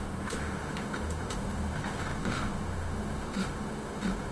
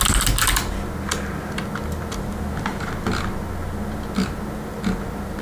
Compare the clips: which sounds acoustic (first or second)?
second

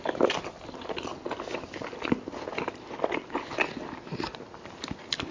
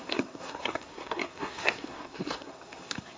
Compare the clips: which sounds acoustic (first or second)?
first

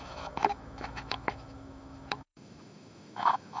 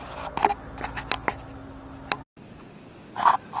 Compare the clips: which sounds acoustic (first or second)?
second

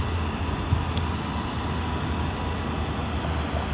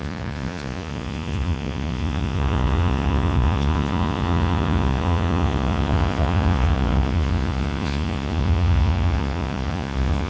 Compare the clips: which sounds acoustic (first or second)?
first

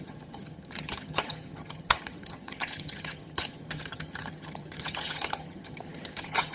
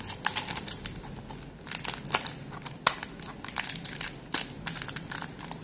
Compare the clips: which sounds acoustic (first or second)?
second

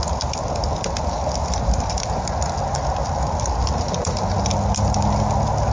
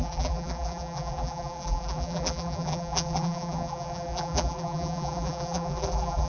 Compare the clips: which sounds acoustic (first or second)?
first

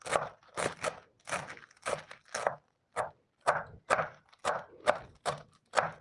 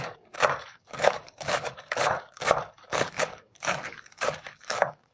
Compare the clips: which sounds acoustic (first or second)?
first